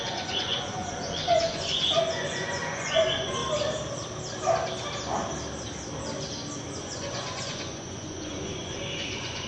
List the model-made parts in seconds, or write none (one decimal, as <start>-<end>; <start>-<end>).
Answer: 0.0-3.4; 6.8-9.5